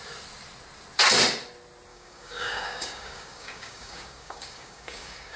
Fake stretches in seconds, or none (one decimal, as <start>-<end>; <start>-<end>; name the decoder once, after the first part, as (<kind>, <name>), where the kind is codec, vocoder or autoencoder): 1.9-5.4 (codec, DAC)